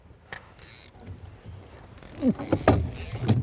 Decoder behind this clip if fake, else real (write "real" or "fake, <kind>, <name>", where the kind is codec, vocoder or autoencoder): real